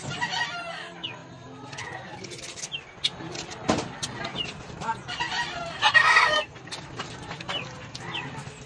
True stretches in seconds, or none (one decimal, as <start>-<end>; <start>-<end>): 0.0-6.0; 6.6-8.7